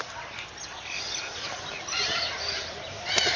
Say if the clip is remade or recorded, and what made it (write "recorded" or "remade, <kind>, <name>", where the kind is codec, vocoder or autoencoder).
recorded